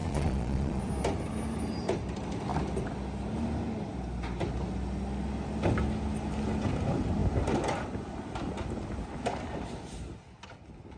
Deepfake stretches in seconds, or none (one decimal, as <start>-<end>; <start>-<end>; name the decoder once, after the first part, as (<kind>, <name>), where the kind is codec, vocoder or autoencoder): 0.0-0.8 (vocoder, Vocos)